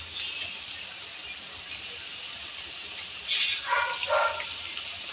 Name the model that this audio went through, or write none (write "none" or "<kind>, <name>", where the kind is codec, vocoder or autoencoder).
none